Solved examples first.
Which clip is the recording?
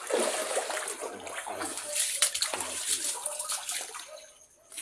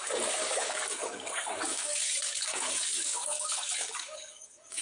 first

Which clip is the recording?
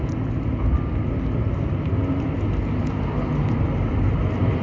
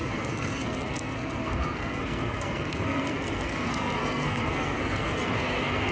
first